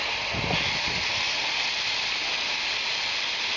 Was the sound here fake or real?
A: real